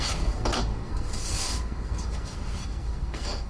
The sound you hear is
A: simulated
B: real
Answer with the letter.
A